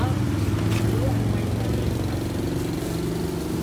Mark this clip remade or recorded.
recorded